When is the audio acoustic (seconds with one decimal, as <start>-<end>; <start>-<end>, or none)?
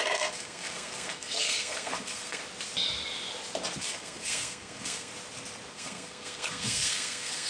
2.4-3.8; 5.1-5.7